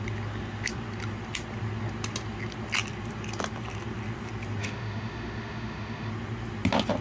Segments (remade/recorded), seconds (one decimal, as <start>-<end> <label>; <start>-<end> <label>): 0.0-4.6 recorded; 4.6-6.1 remade; 6.1-7.0 recorded